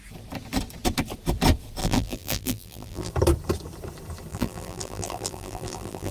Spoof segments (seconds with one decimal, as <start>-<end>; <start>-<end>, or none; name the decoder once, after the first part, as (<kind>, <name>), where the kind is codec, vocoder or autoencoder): 1.8-3.1 (vocoder, BigVGAN v2); 4.3-6.1